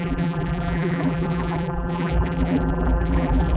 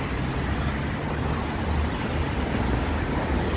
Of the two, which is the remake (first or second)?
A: first